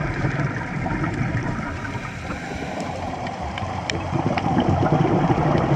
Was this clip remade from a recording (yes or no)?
yes